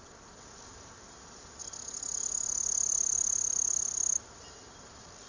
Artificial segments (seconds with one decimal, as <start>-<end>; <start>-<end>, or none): none